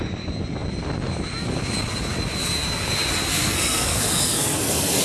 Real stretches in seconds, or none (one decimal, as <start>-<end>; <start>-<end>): 0.0-3.3